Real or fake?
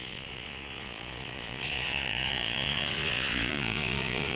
fake